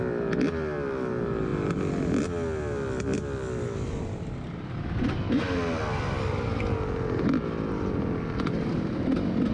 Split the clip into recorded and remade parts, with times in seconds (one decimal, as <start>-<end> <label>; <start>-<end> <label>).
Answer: 0.0-9.5 recorded